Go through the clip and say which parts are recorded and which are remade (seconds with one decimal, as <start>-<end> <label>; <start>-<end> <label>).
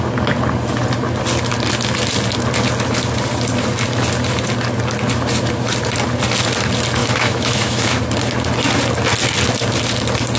0.0-7.0 recorded; 7.0-8.0 remade; 8.0-10.4 recorded